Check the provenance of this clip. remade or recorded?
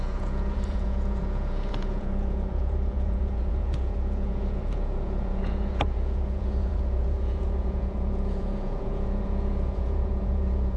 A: remade